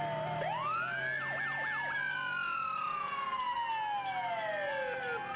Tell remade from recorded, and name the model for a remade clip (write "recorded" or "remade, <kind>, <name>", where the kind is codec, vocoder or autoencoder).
recorded